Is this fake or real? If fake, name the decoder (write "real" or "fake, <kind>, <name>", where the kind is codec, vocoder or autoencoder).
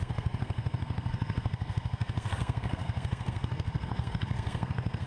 fake, codec, SNAC